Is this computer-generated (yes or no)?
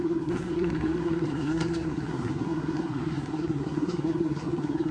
yes